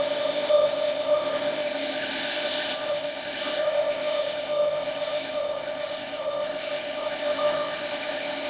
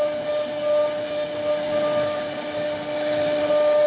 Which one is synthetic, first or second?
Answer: first